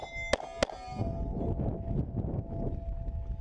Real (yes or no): yes